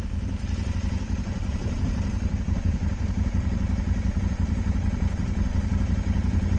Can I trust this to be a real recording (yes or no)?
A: no